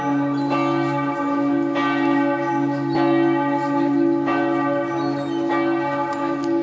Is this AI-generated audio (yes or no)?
no